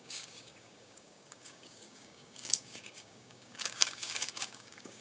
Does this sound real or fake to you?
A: fake